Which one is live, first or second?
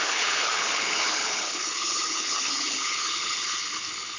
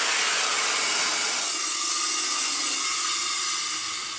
second